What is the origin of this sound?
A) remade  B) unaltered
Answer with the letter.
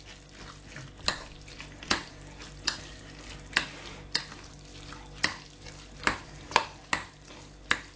B